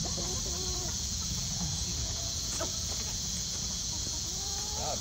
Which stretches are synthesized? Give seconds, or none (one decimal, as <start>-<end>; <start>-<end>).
0.8-5.0